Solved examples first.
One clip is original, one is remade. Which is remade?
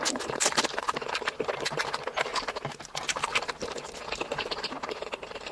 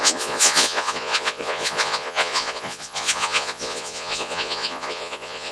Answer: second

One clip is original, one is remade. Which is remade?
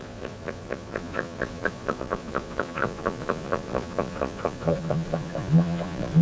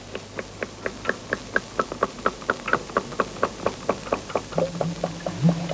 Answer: first